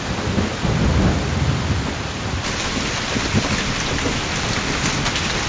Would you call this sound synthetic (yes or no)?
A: no